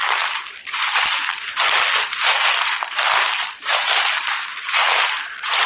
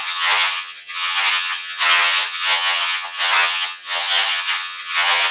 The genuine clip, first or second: first